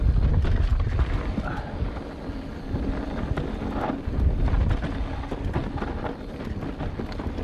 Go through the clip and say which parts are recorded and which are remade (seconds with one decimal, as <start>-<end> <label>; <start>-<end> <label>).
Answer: 0.0-7.4 recorded